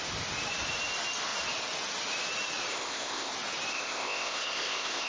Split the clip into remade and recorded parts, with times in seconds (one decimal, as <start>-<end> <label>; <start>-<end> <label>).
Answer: 0.0-2.7 recorded; 2.7-3.3 remade; 3.3-3.7 recorded; 3.7-5.1 remade